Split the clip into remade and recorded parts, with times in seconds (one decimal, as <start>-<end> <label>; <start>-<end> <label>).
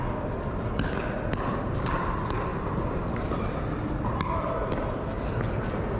0.0-2.5 recorded; 2.5-3.4 remade; 3.4-6.0 recorded